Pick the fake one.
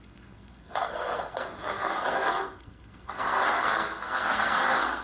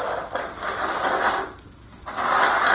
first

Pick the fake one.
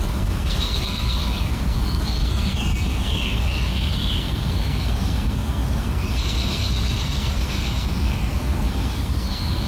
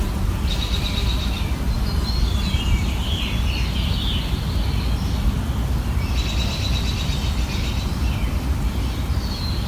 first